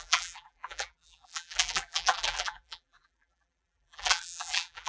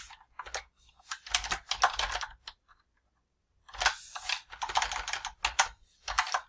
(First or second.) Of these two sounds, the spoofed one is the first